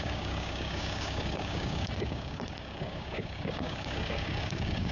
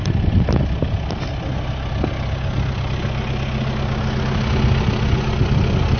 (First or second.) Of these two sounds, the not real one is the first